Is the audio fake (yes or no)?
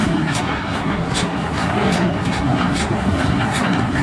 yes